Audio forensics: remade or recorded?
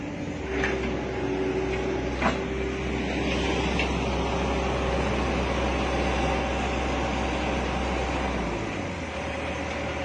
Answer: recorded